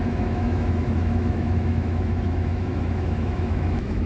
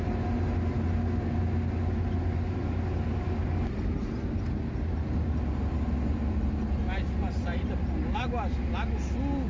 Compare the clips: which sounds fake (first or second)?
first